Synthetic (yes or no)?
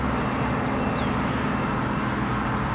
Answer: no